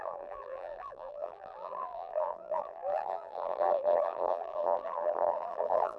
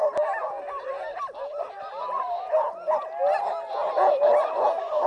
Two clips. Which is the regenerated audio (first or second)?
first